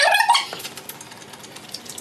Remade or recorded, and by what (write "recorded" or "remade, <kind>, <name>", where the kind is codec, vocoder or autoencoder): recorded